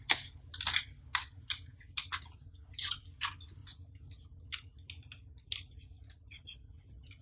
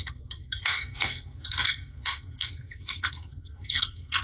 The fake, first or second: second